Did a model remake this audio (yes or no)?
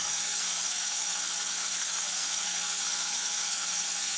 yes